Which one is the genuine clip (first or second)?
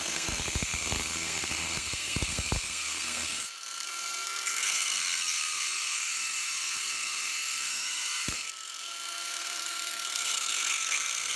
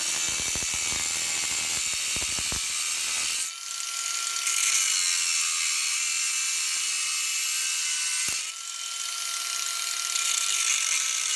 second